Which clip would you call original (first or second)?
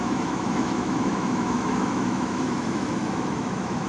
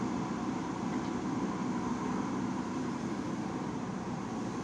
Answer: second